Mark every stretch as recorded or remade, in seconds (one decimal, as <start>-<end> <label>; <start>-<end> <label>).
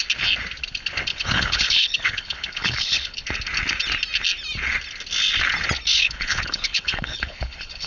0.0-1.1 recorded; 1.1-3.3 remade; 3.3-5.9 recorded; 5.9-7.9 remade